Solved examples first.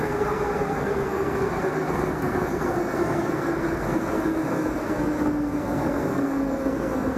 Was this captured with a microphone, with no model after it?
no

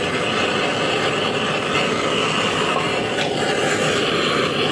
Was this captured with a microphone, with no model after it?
yes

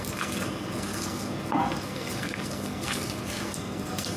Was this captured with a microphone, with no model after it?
no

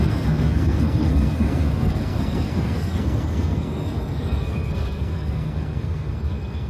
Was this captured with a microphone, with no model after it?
no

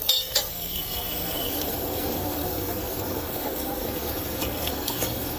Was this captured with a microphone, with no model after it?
no